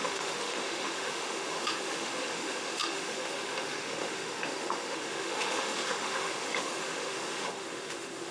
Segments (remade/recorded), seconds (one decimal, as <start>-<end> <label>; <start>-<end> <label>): 0.0-8.3 remade